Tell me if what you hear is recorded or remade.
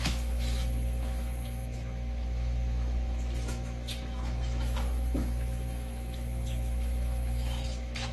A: remade